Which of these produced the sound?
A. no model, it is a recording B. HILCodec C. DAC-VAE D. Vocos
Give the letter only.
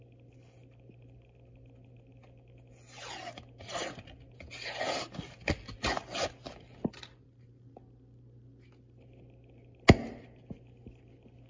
A